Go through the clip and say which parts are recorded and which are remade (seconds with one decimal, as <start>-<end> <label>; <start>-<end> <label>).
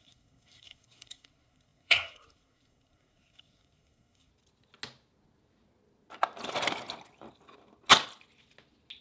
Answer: 0.0-4.3 remade; 4.3-9.0 recorded